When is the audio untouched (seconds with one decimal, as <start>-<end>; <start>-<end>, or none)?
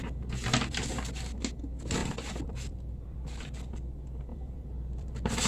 0.0-2.0; 3.7-4.3